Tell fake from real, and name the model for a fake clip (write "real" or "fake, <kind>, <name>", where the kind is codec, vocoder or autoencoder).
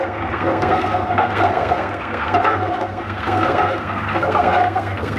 fake, codec, SNAC